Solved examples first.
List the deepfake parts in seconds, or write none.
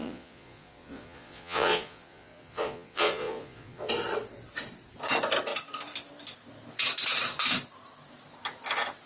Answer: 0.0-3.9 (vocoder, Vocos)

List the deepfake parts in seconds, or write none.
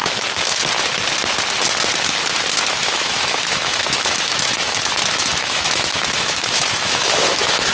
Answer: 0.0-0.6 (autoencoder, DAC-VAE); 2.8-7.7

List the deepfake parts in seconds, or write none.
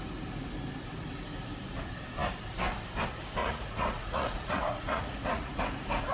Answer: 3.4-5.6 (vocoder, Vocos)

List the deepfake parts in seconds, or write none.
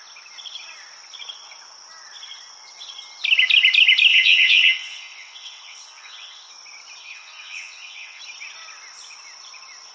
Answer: 4.1-6.5 (vocoder, WaveNeXt); 7.0-8.2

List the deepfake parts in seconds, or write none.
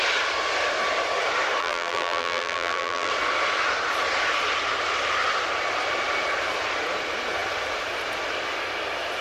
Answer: 1.6-3.1 (vocoder, BigVGAN v2)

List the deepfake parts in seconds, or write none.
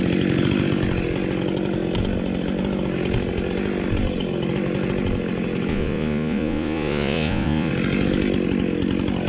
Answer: 5.7-7.7 (vocoder, Vocos)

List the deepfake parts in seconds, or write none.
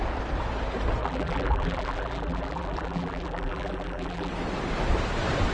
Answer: 1.0-4.3 (vocoder, BigVGAN v2)